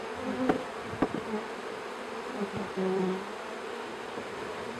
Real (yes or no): yes